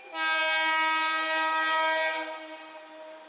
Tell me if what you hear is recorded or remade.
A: recorded